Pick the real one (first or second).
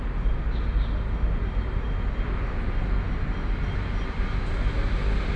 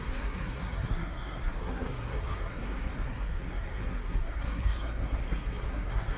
first